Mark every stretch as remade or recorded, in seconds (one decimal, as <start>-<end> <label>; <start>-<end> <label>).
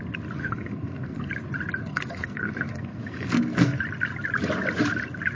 0.0-0.4 recorded; 0.4-1.3 remade; 1.3-1.8 recorded; 1.8-3.8 remade; 3.8-5.3 recorded